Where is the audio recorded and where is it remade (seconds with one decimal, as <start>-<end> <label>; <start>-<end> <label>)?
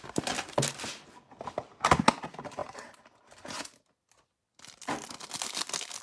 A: 0.0-6.0 recorded